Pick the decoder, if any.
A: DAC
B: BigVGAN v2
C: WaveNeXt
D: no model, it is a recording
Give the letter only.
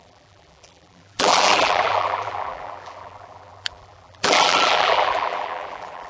B